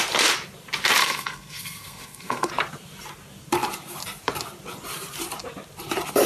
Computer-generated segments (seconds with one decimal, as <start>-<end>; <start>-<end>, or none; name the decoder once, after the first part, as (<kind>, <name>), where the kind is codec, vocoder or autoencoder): 1.0-2.5 (codec, SNAC)